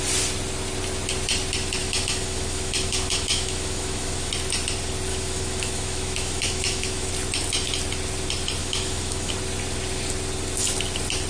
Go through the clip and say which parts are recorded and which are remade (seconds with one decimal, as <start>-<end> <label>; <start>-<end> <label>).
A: 0.0-1.8 recorded; 1.8-4.3 remade; 4.3-5.1 recorded; 5.1-7.1 remade; 7.1-8.6 recorded; 8.6-9.3 remade; 9.3-11.3 recorded